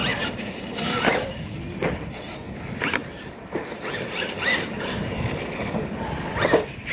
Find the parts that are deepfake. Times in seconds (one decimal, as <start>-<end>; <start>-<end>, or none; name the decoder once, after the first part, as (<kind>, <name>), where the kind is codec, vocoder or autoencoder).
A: 0.0-0.7 (vocoder, BigVGAN v2); 3.0-5.1

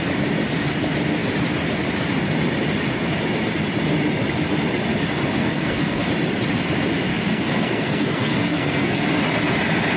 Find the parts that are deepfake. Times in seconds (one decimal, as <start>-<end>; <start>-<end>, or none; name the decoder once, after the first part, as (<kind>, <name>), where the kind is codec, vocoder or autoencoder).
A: 5.4-6.1 (codec, SNAC); 7.1-9.0

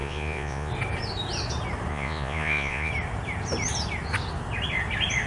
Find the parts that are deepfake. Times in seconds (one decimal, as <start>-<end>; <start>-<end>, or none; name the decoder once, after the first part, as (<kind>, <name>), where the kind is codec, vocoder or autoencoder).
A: 0.0-0.7 (vocoder, Vocos); 1.9-2.9